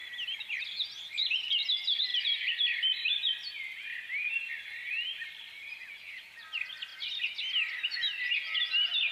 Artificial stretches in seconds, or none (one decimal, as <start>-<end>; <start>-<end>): 2.1-6.0